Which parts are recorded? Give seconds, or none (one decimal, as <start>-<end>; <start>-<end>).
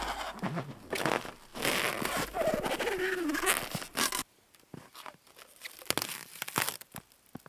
0.0-7.5